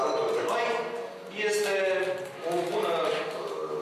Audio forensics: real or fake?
real